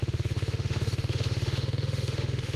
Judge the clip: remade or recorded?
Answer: remade